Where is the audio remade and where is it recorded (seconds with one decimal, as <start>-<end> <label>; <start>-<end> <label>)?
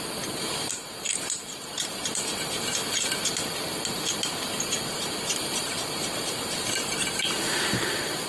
0.0-2.8 remade; 2.8-4.5 recorded; 4.5-8.3 remade